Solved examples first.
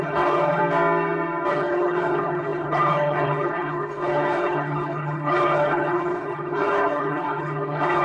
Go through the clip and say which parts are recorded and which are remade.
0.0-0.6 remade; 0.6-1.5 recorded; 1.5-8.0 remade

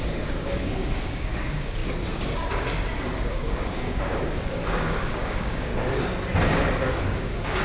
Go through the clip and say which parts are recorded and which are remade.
0.0-1.8 remade; 1.8-3.3 recorded; 3.3-5.7 remade; 5.7-7.0 recorded; 7.0-7.6 remade

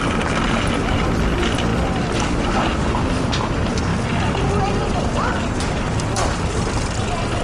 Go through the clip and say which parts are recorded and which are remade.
0.0-7.4 recorded